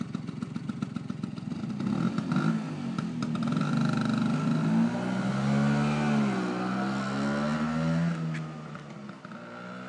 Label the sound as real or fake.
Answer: real